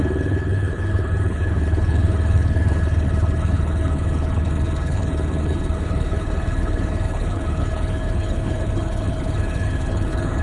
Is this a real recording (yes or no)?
no